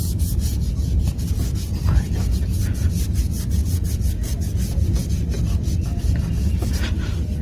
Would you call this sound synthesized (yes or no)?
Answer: no